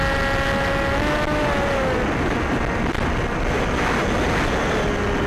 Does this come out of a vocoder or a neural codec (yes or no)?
no